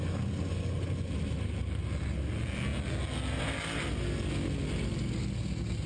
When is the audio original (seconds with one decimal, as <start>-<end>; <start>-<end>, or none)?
0.0-5.9